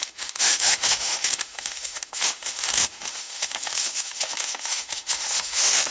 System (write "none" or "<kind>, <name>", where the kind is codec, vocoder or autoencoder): autoencoder, DAC-VAE